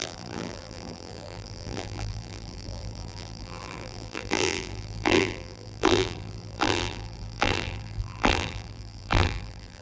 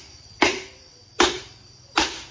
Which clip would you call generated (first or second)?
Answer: first